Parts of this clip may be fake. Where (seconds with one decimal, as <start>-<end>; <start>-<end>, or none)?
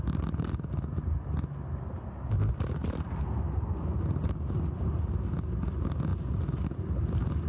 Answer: none